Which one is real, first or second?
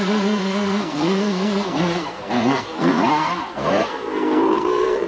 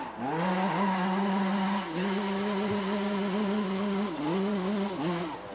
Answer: second